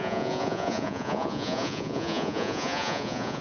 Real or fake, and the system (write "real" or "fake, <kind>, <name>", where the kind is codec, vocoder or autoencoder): fake, vocoder, Vocos